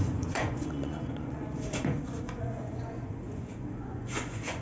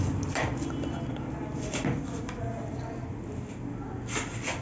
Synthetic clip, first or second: first